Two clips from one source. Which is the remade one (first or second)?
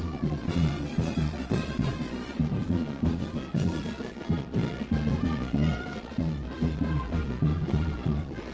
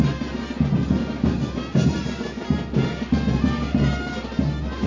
first